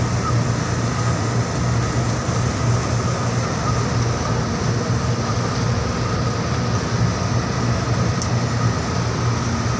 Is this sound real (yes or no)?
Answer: yes